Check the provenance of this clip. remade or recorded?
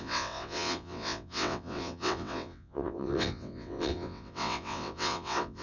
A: remade